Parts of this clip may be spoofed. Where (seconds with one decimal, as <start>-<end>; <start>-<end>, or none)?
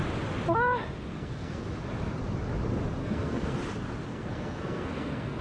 1.1-1.6; 3.0-3.6; 4.1-5.4